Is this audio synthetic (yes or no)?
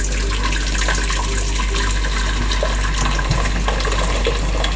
no